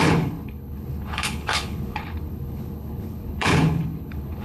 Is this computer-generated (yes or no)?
yes